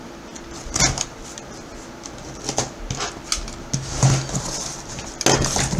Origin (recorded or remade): recorded